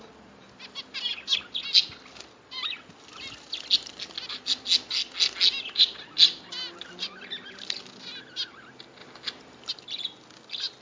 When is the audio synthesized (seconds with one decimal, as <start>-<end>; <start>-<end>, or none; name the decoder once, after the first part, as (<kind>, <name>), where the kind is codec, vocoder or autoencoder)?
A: none